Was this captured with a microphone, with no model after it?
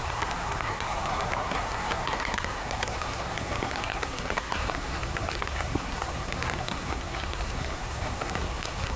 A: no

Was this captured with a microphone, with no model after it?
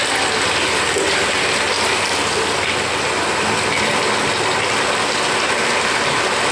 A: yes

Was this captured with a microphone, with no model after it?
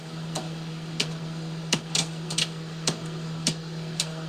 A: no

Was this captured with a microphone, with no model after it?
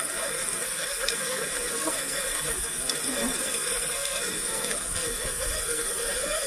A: no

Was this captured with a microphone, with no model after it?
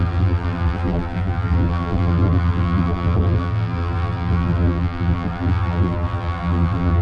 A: no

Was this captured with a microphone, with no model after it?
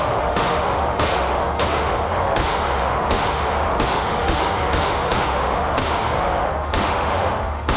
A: no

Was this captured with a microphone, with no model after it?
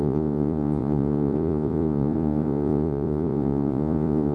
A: no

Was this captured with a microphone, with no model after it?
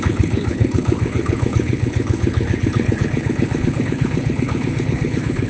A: no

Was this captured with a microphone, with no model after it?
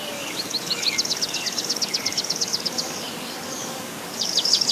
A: no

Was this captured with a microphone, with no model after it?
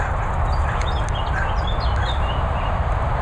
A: yes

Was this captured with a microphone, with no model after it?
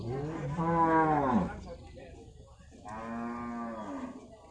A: yes